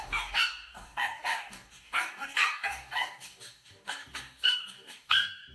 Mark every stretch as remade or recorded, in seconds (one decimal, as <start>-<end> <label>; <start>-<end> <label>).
0.0-5.5 remade